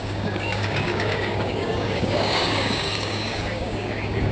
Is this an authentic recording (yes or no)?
no